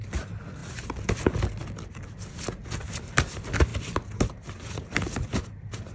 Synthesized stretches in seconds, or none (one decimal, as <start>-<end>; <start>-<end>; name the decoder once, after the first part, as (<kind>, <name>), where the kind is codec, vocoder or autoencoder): 0.6-1.2 (vocoder, BigVGAN v2)

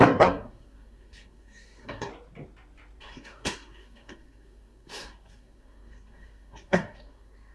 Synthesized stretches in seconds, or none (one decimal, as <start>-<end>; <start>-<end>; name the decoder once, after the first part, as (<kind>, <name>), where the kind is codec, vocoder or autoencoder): 0.0-2.1 (codec, SNAC); 3.0-7.5

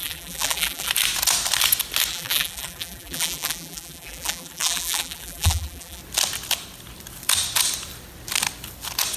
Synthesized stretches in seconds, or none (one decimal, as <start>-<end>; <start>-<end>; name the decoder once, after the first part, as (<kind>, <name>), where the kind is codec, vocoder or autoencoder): 0.0-0.9 (vocoder, BigVGAN v2); 2.1-6.0

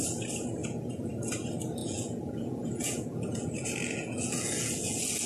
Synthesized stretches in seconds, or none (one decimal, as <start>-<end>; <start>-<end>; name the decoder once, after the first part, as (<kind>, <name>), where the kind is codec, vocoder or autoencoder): 0.6-1.1 (vocoder, Vocos); 1.8-5.3

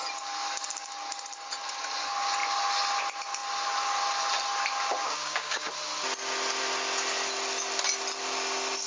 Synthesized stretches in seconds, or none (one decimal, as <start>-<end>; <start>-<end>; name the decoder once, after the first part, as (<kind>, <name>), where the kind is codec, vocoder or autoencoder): 5.0-5.7 (codec, DAC)

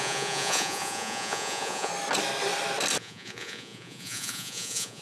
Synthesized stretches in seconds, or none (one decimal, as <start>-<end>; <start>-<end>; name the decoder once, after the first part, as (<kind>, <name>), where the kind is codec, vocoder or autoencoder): 0.0-1.9 (vocoder, Vocos); 3.0-5.0

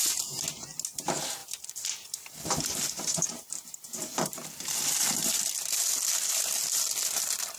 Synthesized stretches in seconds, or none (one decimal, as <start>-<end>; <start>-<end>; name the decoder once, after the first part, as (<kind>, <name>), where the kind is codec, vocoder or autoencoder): 1.4-5.5 (vocoder, BigVGAN v2)